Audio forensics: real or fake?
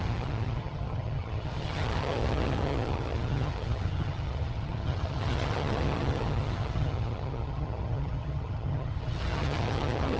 fake